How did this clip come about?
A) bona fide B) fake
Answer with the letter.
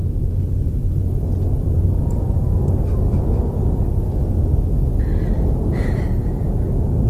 A